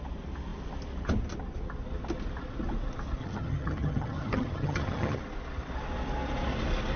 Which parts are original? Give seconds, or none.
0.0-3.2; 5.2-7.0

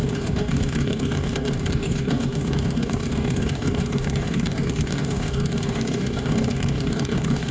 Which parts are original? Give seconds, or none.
none

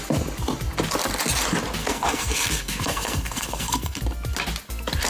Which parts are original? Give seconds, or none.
0.0-1.8; 4.0-5.1

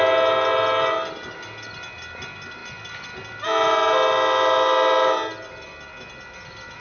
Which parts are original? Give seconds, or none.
0.0-6.8